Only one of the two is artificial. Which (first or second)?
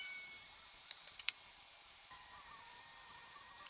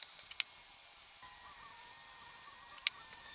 first